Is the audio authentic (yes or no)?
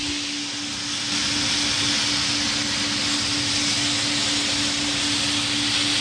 yes